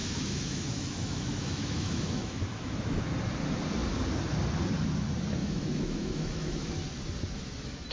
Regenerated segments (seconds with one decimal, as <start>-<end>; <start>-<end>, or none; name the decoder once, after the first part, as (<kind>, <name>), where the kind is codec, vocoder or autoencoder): 0.0-3.0 (autoencoder, DAC-VAE); 5.4-6.7